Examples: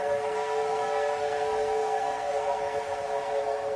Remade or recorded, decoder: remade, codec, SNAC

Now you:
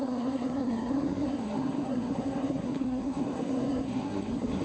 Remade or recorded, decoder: remade, codec, SNAC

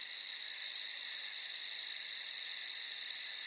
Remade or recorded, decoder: recorded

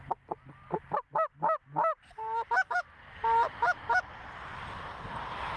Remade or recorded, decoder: recorded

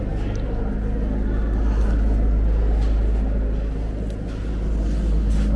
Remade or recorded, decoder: recorded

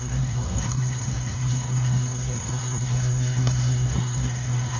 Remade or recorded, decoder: remade, codec, SNAC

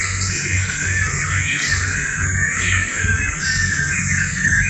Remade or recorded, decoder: remade, codec, SNAC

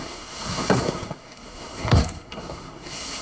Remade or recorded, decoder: remade, codec, SNAC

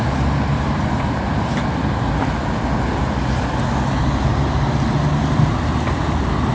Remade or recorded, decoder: recorded